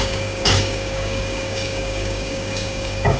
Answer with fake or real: fake